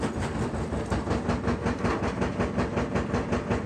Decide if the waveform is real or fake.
real